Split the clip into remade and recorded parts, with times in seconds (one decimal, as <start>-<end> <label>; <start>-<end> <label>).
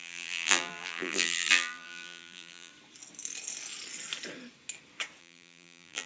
0.0-2.7 remade; 2.7-5.2 recorded; 5.2-6.1 remade